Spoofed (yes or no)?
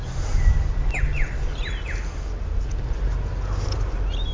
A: no